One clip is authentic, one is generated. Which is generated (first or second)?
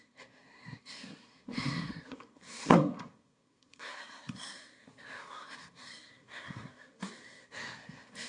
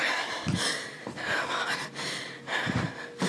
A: first